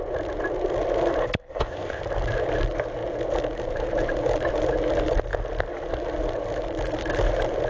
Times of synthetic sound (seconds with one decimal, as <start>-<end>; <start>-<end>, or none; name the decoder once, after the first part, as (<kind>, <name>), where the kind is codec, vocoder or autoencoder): 1.5-2.0 (codec, ZipCodec)